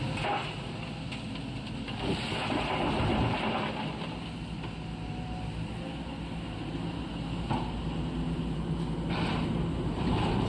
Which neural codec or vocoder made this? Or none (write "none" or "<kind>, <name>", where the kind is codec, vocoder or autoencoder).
none